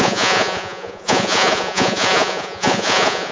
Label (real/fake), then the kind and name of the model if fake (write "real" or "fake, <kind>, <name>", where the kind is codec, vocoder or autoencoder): fake, vocoder, Vocos